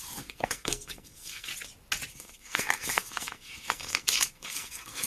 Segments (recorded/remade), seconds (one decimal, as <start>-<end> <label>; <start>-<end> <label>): 0.0-1.5 remade; 1.5-2.1 recorded; 2.1-5.1 remade